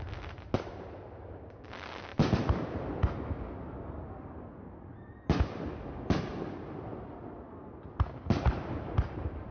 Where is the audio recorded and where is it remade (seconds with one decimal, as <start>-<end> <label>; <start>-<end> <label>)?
0.0-9.5 recorded